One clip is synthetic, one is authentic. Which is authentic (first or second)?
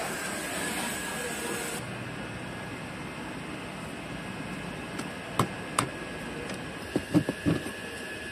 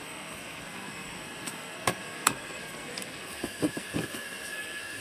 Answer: first